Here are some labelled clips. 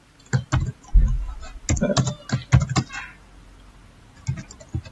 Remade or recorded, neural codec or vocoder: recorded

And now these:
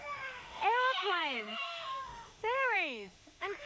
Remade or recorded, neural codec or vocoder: remade, autoencoder, DAC-VAE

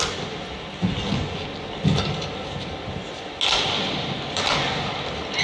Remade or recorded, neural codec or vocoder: recorded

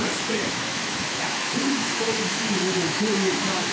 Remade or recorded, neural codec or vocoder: remade, autoencoder, DAC-VAE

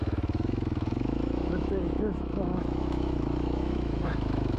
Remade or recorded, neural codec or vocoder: remade, autoencoder, DAC-VAE